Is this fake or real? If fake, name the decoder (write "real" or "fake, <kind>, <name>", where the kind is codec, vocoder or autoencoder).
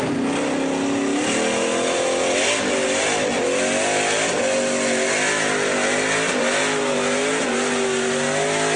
real